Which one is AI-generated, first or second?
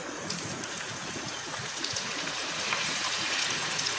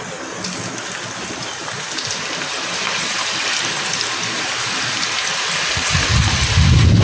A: first